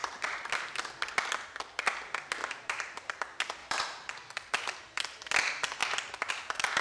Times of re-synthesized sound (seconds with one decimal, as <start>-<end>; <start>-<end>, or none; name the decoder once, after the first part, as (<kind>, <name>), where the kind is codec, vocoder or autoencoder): 0.0-0.6 (vocoder, BigVGAN v2); 2.4-3.2; 3.6-4.1